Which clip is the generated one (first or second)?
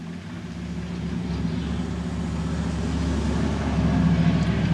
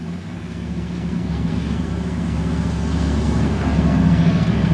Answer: second